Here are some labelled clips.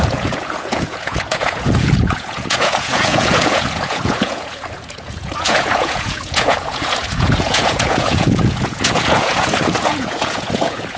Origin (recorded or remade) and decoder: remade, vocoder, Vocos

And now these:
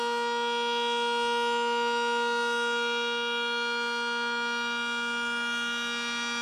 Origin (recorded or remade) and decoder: recorded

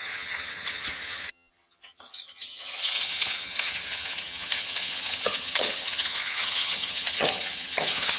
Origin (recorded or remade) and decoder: remade, vocoder, HiFi-GAN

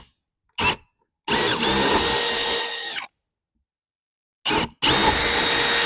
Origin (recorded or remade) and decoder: recorded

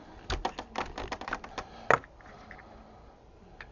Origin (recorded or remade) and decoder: recorded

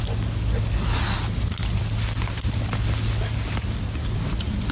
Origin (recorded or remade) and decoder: recorded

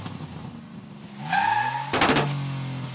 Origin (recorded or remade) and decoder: recorded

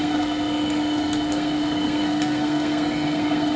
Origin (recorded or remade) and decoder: remade, codec, SNAC